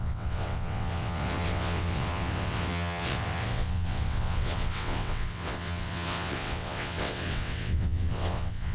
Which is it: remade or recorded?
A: remade